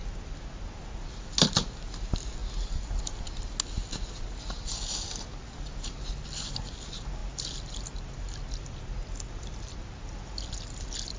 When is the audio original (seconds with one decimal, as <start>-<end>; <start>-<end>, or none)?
0.0-11.2